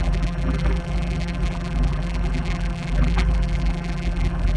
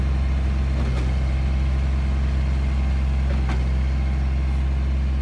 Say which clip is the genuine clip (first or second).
second